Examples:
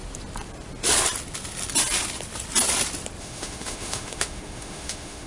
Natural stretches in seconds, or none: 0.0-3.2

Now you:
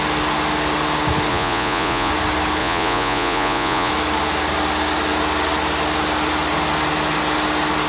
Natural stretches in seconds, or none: 0.0-1.3; 2.1-2.6; 3.9-7.9

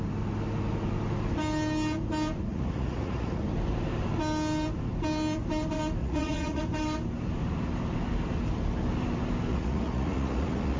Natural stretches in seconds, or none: 0.0-2.5; 3.4-6.0; 6.6-9.5

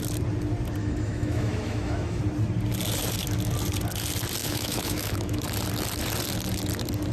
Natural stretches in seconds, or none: 0.0-0.8; 2.2-4.4; 5.4-7.1

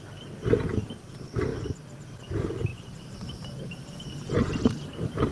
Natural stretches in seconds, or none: 0.0-1.5; 2.0-2.7

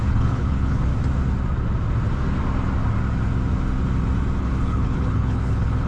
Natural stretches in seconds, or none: 0.9-4.4